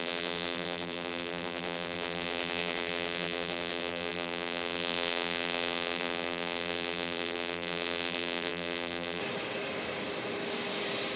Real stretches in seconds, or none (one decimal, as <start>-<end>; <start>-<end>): 9.2-11.2